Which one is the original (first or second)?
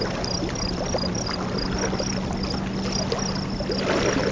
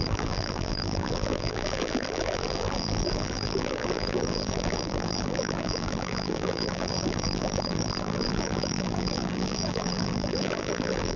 first